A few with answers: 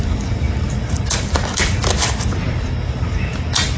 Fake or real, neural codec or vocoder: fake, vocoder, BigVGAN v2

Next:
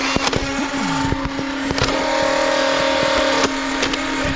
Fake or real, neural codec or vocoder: real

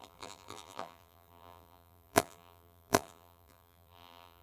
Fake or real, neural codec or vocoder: fake, vocoder, BigVGAN v2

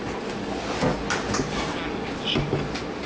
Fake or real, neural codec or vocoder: real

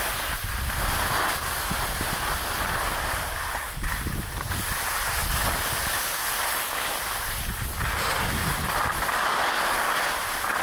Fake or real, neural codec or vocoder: real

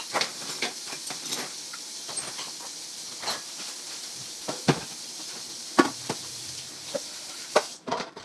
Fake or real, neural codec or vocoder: fake, vocoder, BigVGAN v2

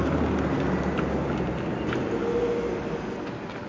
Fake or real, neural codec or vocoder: real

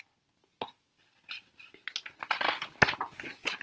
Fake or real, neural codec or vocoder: real